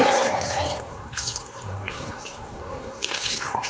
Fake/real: fake